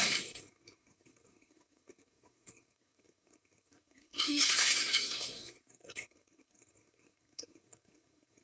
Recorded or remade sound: remade